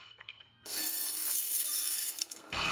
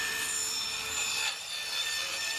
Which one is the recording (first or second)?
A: second